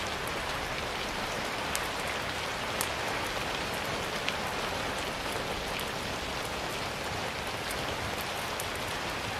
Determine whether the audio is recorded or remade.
recorded